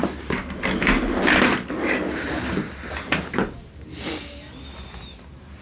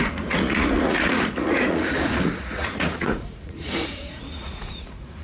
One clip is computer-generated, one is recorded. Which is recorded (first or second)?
first